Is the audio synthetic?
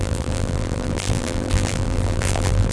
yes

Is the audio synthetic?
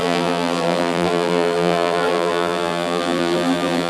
yes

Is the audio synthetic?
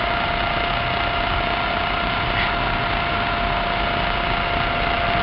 no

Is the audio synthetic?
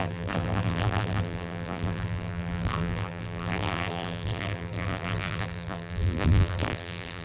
yes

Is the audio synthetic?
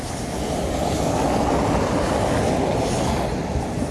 no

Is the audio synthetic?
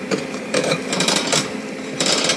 yes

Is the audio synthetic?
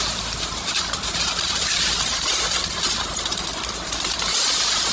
yes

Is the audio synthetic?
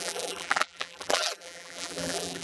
yes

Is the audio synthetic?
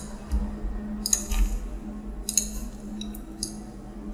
no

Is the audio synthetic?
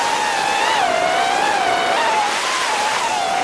no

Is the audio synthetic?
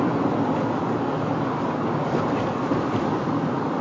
no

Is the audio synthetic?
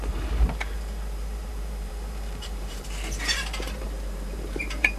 yes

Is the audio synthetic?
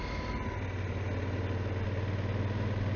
no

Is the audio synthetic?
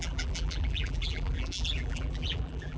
yes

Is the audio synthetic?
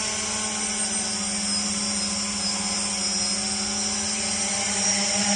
no